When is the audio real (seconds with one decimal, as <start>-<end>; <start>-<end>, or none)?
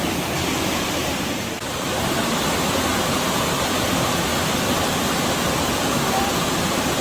2.2-3.4; 4.3-5.8